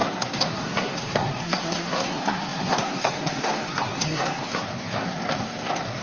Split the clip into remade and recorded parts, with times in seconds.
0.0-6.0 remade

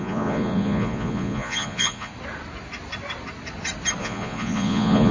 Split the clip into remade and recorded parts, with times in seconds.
0.0-2.1 remade; 2.1-4.0 recorded; 4.0-5.1 remade